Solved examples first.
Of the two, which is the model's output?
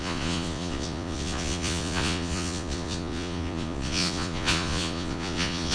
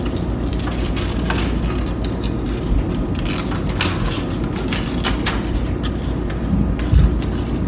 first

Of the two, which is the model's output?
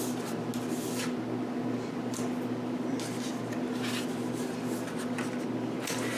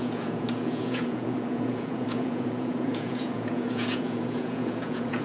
second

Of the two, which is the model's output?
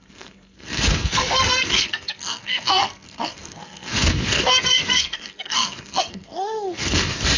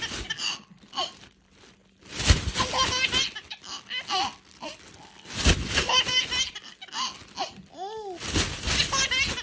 first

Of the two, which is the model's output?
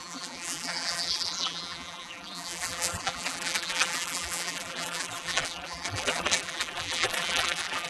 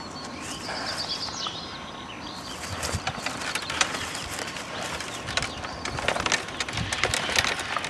first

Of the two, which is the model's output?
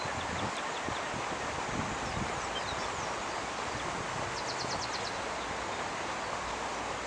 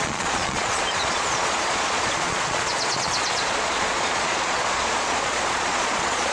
second